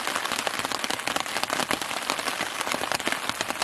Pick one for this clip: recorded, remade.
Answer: recorded